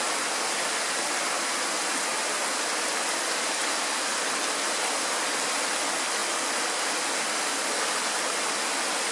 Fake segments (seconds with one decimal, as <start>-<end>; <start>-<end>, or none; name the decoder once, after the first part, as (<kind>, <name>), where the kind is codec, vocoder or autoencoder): none